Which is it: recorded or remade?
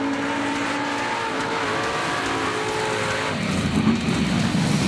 recorded